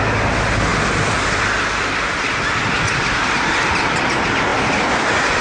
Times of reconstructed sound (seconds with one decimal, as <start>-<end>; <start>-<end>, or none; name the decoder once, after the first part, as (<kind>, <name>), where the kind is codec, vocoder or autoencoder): none